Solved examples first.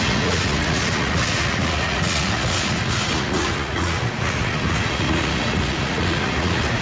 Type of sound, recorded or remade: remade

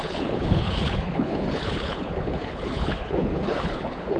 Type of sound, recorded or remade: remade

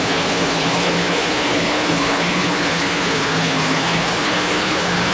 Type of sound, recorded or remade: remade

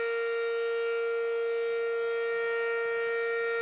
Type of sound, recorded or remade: recorded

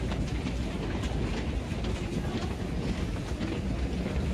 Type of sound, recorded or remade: recorded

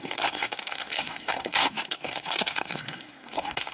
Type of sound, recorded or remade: remade